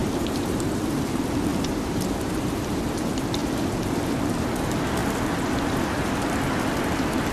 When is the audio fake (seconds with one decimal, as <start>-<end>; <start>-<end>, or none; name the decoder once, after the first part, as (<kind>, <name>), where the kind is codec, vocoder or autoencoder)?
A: 0.0-1.0 (vocoder, BigVGAN v2); 1.5-2.8